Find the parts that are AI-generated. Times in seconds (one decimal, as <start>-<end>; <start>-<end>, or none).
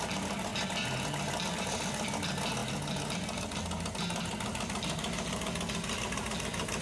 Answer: none